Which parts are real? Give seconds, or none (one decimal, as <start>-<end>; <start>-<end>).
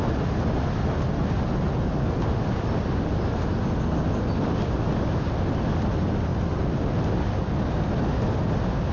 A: 0.0-8.9